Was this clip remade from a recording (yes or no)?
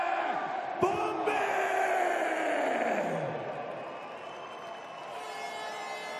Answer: no